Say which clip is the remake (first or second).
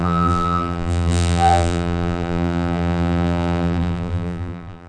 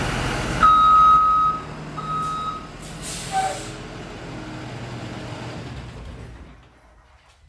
first